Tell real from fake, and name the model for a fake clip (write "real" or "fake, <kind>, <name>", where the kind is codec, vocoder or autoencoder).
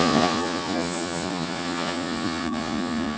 fake, vocoder, Vocos